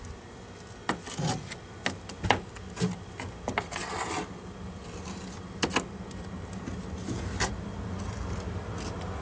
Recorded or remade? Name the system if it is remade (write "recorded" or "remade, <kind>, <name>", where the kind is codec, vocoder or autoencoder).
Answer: recorded